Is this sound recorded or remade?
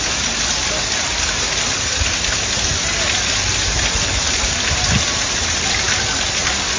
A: recorded